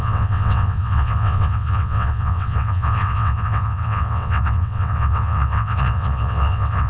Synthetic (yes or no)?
yes